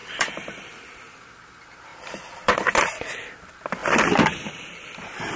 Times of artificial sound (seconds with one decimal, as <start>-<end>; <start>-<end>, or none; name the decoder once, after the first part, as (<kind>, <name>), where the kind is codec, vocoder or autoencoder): 0.0-0.8 (vocoder, BigVGAN v2); 1.9-2.8; 3.8-4.5